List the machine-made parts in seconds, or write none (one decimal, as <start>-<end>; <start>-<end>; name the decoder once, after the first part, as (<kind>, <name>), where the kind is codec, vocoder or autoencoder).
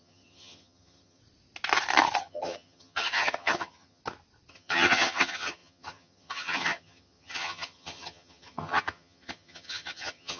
0.0-1.2 (vocoder, HiFi-GAN); 2.2-4.0; 4.5-10.4